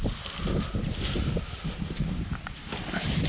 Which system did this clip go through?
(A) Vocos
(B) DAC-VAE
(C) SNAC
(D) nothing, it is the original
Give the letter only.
D